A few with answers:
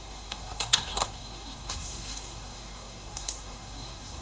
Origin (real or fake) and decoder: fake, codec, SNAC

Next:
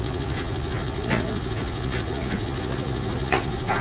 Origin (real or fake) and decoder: fake, vocoder, Vocos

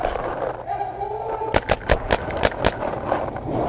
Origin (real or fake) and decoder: real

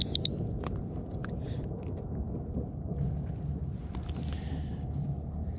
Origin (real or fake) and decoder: real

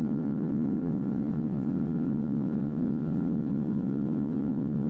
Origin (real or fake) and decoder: fake, vocoder, WaveNeXt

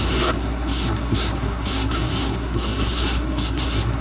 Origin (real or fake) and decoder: fake, codec, SNAC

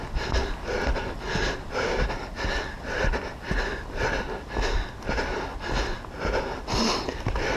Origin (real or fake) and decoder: real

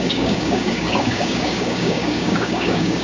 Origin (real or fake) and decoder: fake, codec, DAC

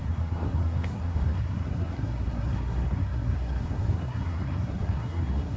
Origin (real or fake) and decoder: fake, codec, SNAC